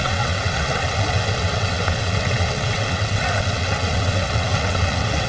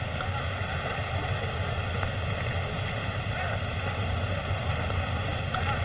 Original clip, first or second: second